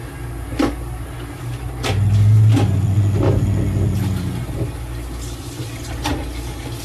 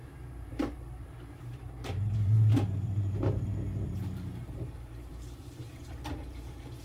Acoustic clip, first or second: first